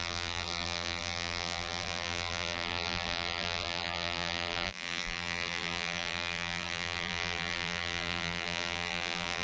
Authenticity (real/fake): fake